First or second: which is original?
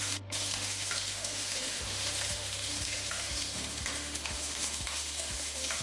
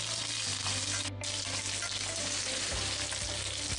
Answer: second